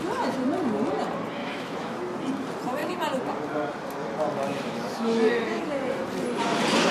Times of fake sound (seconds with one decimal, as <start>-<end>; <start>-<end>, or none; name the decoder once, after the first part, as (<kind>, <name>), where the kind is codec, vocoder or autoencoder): 1.4-2.0 (autoencoder, DAC-VAE); 4.5-5.6